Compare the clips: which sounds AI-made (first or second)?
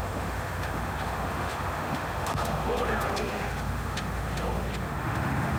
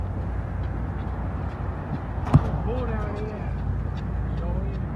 first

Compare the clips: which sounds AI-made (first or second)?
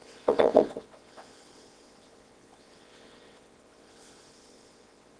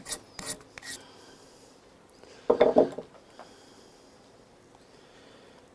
first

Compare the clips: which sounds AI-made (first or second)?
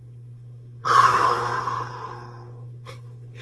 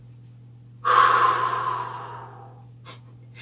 first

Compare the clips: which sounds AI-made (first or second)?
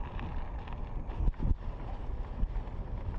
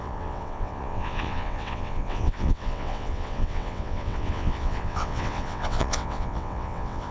second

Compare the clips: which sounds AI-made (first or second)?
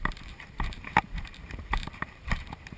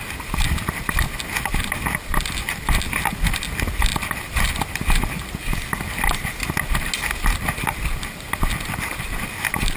first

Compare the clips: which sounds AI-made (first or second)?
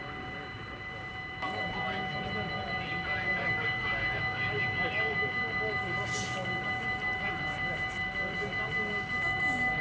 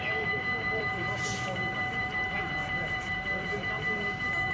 second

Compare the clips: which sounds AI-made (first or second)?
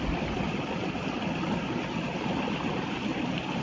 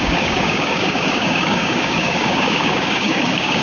second